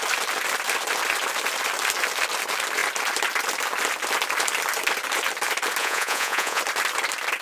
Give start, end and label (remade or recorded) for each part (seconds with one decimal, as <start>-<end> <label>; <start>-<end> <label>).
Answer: 0.0-5.8 recorded; 5.8-6.6 remade; 6.6-7.4 recorded